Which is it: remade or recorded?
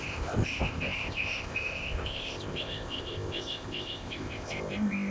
remade